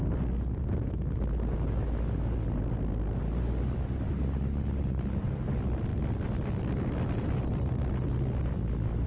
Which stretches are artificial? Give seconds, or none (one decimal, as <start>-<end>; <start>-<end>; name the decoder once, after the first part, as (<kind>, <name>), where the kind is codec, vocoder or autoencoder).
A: none